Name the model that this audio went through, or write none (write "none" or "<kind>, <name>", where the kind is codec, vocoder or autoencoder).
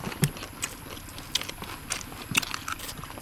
none